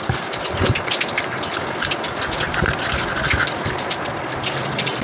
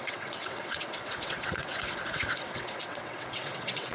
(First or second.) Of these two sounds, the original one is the first